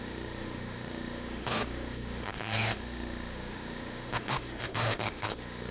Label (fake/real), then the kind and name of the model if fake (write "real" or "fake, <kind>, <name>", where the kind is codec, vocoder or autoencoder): fake, autoencoder, DAC-VAE